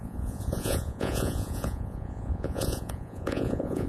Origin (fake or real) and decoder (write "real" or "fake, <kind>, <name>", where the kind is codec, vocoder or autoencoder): fake, vocoder, Vocos